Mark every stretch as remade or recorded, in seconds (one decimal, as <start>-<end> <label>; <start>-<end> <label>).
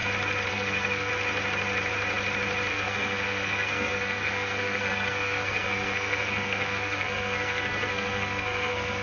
0.0-0.5 recorded; 0.5-1.1 remade; 1.1-2.7 recorded; 2.7-9.0 remade